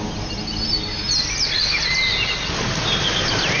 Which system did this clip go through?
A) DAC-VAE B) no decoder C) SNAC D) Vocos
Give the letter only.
B